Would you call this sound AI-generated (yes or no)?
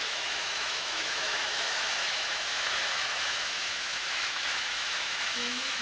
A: yes